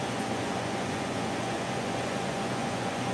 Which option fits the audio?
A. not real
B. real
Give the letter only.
A